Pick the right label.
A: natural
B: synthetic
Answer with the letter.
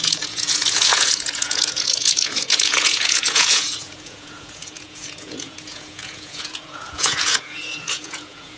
B